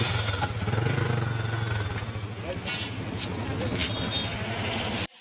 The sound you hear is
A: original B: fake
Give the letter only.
A